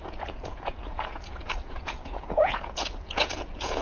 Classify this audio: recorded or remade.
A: remade